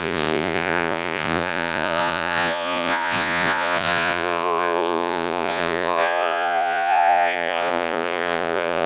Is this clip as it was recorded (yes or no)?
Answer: no